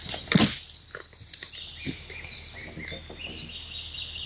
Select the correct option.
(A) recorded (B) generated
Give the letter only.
A